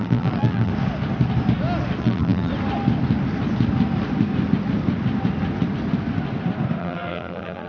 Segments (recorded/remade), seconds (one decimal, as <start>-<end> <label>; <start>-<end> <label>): 0.0-0.7 remade; 0.7-2.0 recorded; 2.0-2.5 remade; 2.5-6.8 recorded; 6.8-7.7 remade